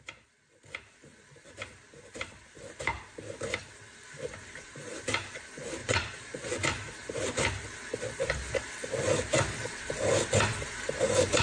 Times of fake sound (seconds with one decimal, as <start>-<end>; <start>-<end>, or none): 5.8-6.5

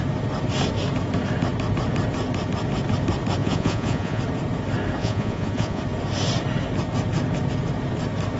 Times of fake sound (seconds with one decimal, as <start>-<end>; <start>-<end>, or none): 3.4-4.2; 5.0-5.8

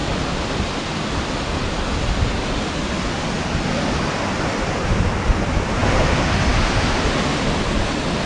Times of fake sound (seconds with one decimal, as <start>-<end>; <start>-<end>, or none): none

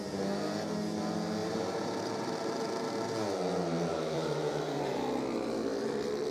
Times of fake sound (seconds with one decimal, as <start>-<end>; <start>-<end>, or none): 1.4-2.7; 3.9-5.0

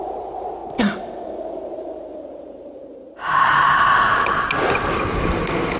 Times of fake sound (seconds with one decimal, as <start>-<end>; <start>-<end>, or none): 1.7-3.9